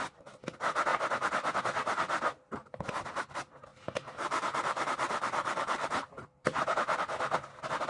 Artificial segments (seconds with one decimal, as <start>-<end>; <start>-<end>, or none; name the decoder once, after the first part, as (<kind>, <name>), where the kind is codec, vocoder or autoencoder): 3.7-7.0 (vocoder, BigVGAN v2)